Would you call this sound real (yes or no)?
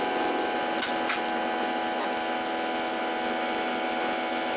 yes